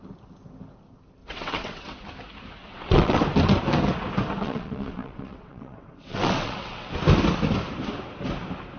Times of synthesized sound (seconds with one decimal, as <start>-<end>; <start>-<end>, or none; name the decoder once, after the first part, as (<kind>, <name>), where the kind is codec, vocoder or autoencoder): 1.2-2.0 (vocoder, WaveNeXt); 2.6-3.2; 4.4-6.9